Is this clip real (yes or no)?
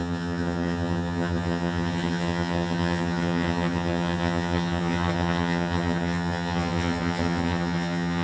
no